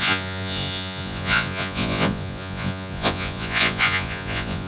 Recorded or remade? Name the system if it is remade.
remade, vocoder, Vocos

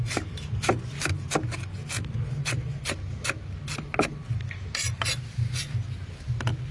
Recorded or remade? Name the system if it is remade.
recorded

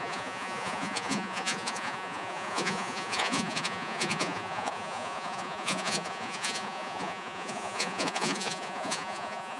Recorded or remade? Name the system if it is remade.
remade, vocoder, Vocos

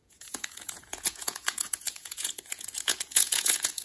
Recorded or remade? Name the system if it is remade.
remade, vocoder, Vocos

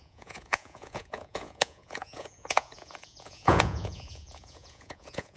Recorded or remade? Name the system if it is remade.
remade, vocoder, Vocos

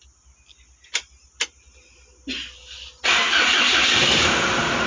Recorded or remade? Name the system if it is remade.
recorded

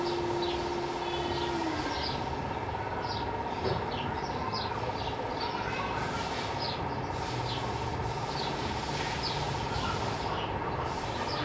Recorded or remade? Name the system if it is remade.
recorded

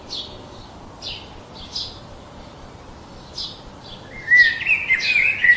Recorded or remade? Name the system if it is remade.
recorded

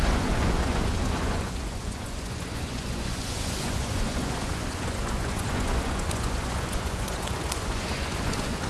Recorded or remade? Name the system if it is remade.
remade, vocoder, Vocos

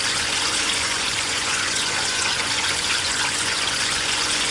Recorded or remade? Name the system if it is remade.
remade, vocoder, Vocos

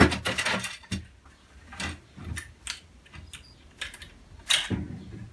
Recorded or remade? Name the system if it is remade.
recorded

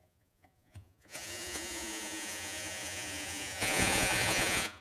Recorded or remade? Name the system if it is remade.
remade, vocoder, Vocos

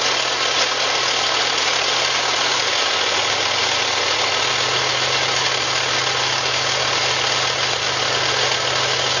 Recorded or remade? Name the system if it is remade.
recorded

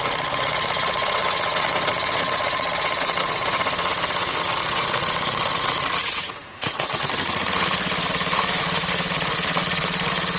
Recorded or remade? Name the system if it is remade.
remade, vocoder, Vocos